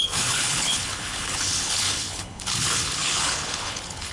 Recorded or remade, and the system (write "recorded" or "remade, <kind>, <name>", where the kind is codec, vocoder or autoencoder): remade, codec, HILCodec